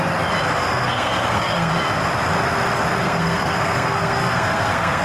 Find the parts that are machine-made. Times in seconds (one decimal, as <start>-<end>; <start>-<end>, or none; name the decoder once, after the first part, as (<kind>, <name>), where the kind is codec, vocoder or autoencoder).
0.6-1.7 (codec, SNAC); 3.0-5.0